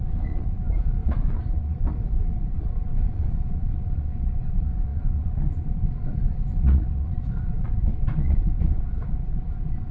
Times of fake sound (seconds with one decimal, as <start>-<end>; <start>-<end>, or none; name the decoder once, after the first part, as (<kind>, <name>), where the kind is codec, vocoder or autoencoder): 0.0-9.9 (vocoder, Vocos)